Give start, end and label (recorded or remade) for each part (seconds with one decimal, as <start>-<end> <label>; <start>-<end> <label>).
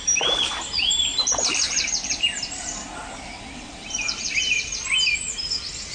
0.0-1.1 recorded; 1.1-4.6 remade; 4.6-5.9 recorded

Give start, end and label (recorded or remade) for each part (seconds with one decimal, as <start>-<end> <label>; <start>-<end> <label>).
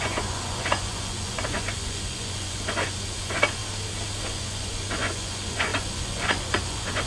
0.0-3.6 remade; 3.6-4.2 recorded; 4.2-7.1 remade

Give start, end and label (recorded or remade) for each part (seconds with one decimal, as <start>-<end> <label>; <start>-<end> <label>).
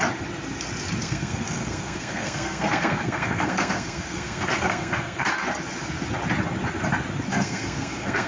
0.0-1.0 recorded; 1.0-5.3 remade; 5.3-7.3 recorded; 7.3-8.3 remade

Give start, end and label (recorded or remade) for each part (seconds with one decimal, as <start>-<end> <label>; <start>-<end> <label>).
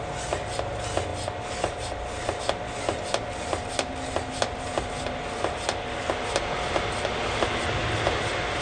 0.0-8.6 recorded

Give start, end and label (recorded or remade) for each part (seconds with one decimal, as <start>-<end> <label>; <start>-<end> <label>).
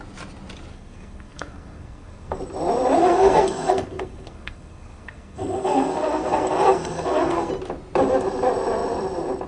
0.0-0.7 recorded; 0.7-2.4 remade; 2.4-3.0 recorded; 3.0-7.5 remade; 7.5-9.5 recorded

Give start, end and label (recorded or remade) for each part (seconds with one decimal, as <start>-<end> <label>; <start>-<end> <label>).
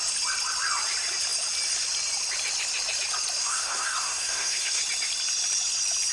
0.0-3.4 recorded; 3.4-4.8 remade; 4.8-6.1 recorded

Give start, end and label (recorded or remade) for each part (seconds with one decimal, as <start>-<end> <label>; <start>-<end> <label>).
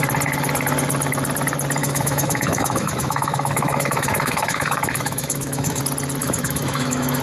0.0-1.8 recorded; 1.8-5.8 remade; 5.8-6.2 recorded; 6.2-7.2 remade